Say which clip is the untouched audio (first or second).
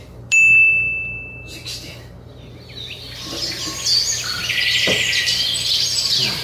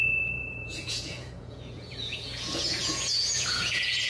first